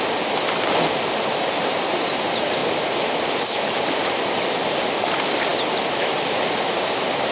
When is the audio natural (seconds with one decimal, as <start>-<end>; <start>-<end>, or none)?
0.0-7.3